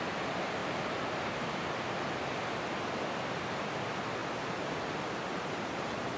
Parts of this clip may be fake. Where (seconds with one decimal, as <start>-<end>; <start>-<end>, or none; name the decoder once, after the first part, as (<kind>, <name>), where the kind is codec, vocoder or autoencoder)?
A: 0.6-1.7 (vocoder, BigVGAN v2)